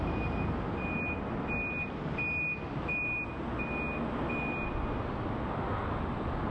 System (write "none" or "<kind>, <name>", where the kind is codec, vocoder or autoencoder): none